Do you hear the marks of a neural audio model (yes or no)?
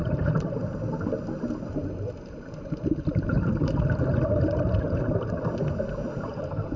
yes